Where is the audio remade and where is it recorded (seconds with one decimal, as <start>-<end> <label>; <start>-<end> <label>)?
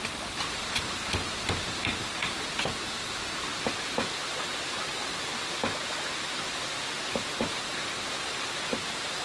0.0-9.2 recorded